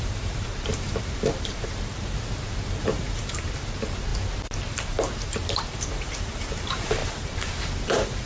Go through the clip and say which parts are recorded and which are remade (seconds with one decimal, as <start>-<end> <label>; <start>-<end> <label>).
0.0-4.1 remade; 4.1-4.7 recorded; 4.7-8.3 remade